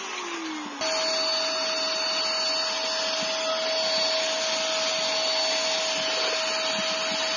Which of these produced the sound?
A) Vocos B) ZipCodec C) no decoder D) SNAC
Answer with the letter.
C